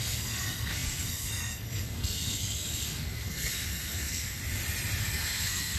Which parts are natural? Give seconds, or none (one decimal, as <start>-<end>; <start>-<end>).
4.4-5.0